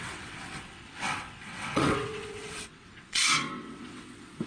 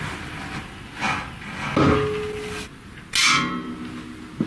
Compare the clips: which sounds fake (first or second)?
first